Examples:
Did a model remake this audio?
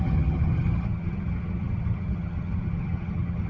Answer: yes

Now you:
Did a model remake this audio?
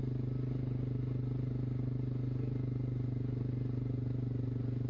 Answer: no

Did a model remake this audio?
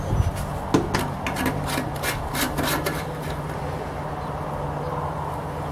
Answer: no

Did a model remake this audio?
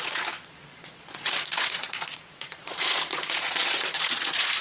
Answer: yes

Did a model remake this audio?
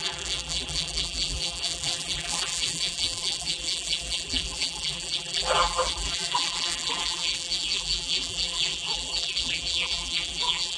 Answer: yes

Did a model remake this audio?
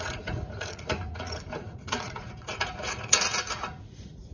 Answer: yes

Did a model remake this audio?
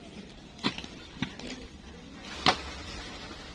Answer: no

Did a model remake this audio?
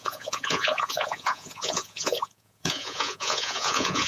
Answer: yes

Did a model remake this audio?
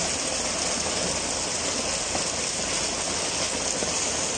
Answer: no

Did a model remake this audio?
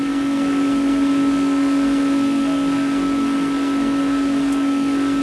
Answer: yes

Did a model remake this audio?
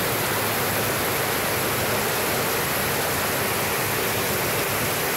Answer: no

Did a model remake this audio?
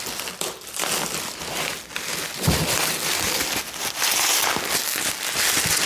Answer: no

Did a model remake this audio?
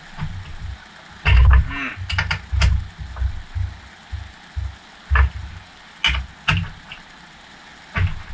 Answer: no